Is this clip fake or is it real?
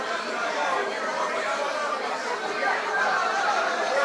fake